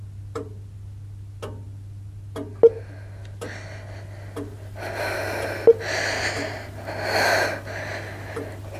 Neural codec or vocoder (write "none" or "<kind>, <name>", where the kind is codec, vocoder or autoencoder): none